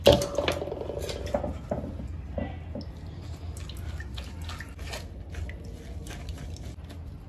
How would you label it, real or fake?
real